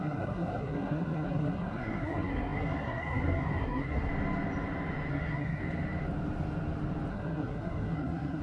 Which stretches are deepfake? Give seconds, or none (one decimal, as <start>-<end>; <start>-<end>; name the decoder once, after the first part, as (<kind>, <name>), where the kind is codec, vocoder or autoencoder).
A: 0.0-4.1 (codec, SNAC); 5.1-5.6; 7.1-8.4